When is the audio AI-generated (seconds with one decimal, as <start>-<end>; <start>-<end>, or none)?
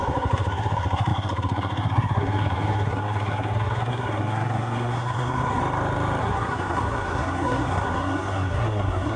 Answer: 0.0-5.6; 6.2-9.2